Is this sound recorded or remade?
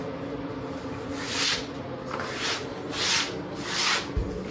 recorded